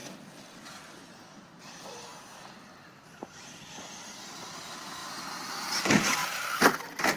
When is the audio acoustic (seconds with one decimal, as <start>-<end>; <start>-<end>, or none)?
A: 0.0-7.2